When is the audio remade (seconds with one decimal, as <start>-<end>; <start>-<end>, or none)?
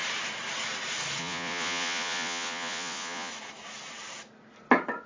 1.2-3.3